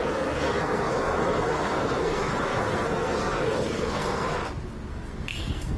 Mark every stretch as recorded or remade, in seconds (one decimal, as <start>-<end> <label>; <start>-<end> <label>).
0.0-4.4 remade; 4.4-4.9 recorded; 4.9-5.8 remade